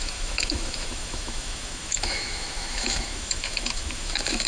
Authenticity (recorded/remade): remade